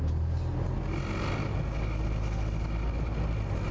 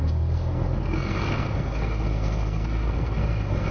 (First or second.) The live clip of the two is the first